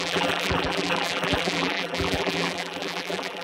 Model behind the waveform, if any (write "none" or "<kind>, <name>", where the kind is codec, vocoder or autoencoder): vocoder, BigVGAN v2